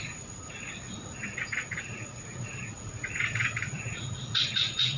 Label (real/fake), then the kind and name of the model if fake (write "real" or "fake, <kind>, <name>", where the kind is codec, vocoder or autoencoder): fake, vocoder, Vocos